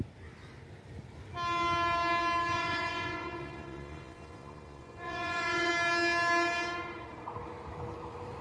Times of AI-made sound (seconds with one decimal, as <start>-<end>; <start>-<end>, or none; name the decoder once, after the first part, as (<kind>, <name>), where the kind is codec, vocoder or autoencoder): 2.5-5.7 (vocoder, Vocos)